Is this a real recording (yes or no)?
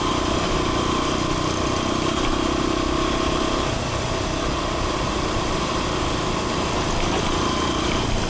yes